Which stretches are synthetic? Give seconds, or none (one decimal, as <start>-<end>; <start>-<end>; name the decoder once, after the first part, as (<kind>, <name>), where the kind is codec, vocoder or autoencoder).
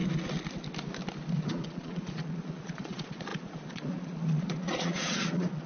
1.4-5.7 (vocoder, Vocos)